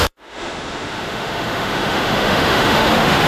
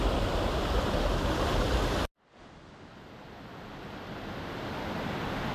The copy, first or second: first